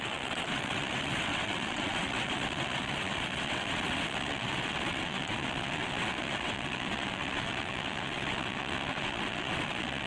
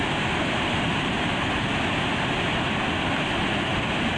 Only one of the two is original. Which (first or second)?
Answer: second